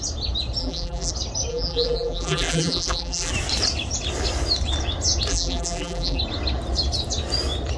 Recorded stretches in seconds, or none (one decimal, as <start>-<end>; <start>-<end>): 0.0-0.6; 1.1-1.5; 3.3-5.3; 6.2-7.8